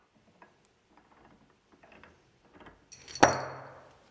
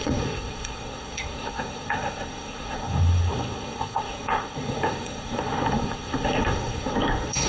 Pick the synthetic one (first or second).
second